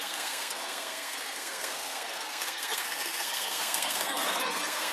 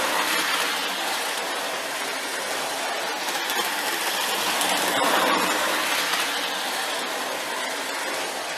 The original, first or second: second